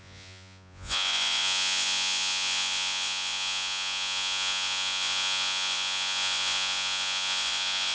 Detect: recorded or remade remade